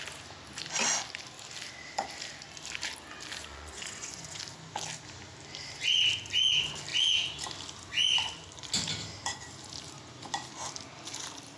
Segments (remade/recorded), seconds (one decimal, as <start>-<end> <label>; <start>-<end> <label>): 0.0-3.4 recorded; 3.4-4.4 remade; 4.4-11.6 recorded

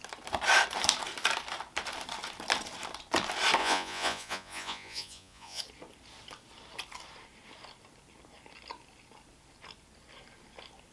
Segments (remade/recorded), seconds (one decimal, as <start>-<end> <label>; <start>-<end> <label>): 0.0-3.6 recorded; 3.6-5.6 remade; 5.6-10.9 recorded